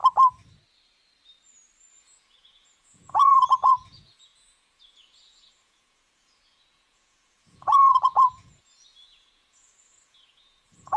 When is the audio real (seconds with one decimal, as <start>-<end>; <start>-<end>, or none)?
0.0-1.9